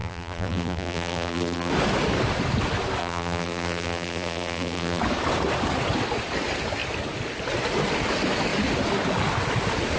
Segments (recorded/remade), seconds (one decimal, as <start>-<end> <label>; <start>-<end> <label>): 0.0-1.7 remade; 1.7-3.0 recorded; 3.0-5.0 remade; 5.0-10.0 recorded